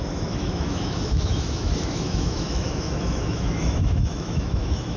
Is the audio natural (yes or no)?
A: no